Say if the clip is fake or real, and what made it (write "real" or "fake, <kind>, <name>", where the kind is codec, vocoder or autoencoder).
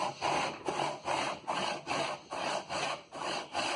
real